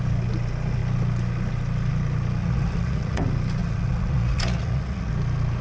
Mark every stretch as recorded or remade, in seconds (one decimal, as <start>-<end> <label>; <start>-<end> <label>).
0.0-2.4 recorded; 2.4-3.2 remade; 3.2-3.6 recorded; 3.6-5.1 remade; 5.1-5.6 recorded